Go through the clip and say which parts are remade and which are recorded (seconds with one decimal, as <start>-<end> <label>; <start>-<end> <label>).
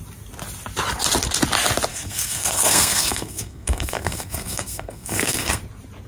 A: 0.0-1.9 recorded; 1.9-5.6 remade; 5.6-6.1 recorded